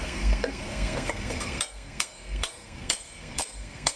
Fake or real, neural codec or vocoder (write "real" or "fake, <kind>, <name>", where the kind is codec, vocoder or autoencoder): fake, codec, SNAC